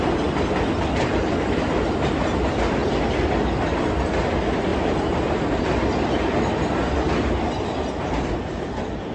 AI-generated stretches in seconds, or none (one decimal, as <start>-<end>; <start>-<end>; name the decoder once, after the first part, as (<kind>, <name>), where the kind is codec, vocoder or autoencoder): none